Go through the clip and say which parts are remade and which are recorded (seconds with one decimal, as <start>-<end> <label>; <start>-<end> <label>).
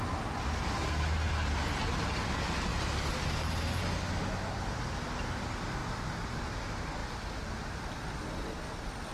0.0-2.7 recorded; 2.7-3.3 remade; 3.3-9.1 recorded